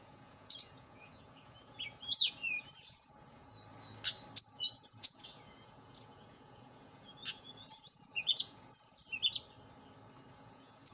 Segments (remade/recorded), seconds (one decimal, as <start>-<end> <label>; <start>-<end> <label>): 0.0-3.7 remade; 3.7-4.4 recorded; 4.4-9.0 remade; 9.0-10.3 recorded; 10.3-10.9 remade